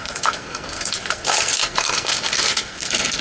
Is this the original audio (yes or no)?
no